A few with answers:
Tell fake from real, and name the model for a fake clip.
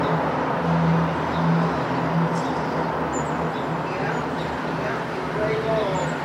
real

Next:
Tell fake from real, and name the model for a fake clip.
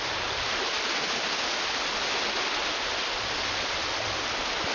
real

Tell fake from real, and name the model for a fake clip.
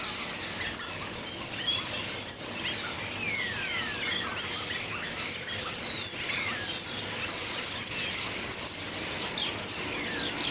real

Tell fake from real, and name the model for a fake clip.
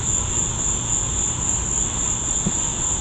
real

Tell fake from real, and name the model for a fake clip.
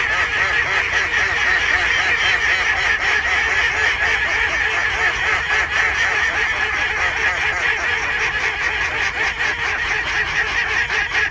real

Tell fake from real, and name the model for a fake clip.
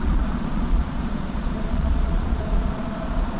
fake, vocoder, Vocos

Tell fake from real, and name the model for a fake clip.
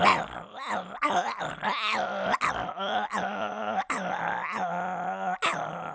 real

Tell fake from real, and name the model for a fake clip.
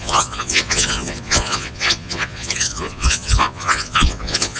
fake, vocoder, Vocos